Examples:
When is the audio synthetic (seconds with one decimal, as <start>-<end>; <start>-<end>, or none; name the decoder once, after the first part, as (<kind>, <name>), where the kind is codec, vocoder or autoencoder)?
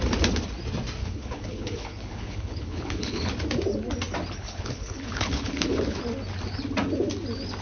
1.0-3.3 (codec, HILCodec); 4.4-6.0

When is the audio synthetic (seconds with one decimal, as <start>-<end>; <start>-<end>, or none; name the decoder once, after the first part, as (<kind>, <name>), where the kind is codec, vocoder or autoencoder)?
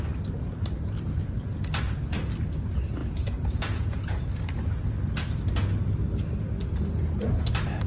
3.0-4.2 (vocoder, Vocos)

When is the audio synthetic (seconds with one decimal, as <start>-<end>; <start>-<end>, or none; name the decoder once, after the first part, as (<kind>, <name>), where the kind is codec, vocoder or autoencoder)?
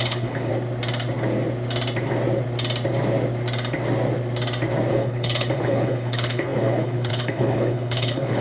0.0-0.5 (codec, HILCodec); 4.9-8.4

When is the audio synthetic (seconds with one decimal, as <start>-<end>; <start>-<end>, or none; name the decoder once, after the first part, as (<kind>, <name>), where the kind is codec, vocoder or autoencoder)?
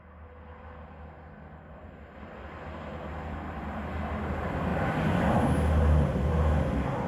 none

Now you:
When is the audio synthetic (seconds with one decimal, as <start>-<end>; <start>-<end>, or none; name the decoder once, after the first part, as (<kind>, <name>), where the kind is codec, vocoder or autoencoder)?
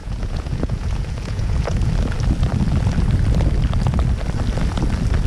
0.0-1.9 (vocoder, Vocos)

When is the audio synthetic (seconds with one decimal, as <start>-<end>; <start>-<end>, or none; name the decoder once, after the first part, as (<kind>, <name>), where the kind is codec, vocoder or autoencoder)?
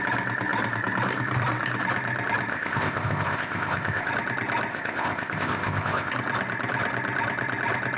2.5-4.1 (codec, ZipCodec); 4.7-6.1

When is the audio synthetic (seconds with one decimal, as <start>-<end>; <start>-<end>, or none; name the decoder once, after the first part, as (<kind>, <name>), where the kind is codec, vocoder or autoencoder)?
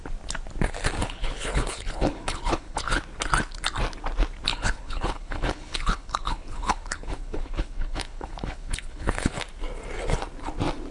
1.0-3.0 (codec, HILCodec); 4.5-9.4